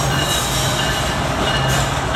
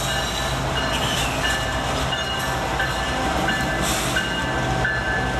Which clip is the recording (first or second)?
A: second